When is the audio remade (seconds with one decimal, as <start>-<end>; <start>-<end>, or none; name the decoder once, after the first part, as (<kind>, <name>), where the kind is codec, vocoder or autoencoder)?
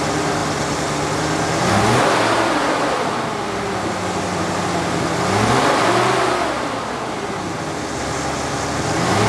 none